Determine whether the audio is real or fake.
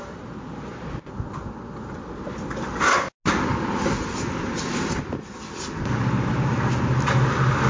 real